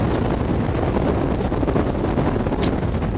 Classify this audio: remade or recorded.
recorded